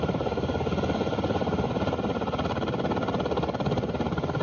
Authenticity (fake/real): real